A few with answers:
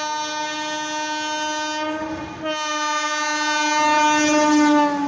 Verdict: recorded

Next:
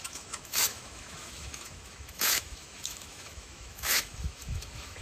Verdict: remade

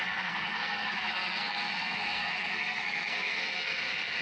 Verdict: remade